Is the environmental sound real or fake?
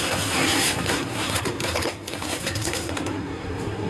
fake